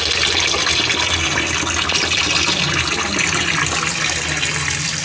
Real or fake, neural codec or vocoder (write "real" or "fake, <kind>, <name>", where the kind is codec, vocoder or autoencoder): real